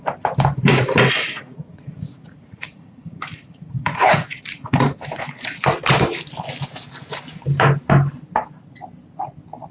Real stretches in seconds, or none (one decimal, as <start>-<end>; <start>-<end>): 0.0-0.7; 5.6-9.7